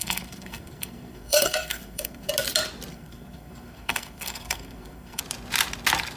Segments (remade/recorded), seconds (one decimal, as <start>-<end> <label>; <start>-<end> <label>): 0.0-2.3 remade; 2.3-2.9 recorded; 2.9-5.2 remade; 5.2-6.2 recorded